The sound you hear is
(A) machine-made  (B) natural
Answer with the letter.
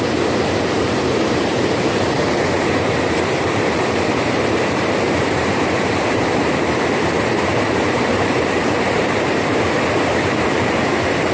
A